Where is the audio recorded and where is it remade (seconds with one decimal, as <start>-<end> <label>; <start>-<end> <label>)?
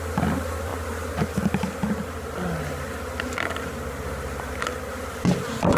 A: 0.0-5.8 recorded